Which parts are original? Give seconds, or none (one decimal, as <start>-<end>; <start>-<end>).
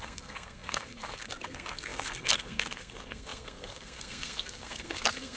none